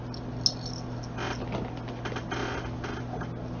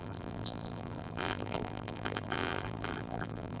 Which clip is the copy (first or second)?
second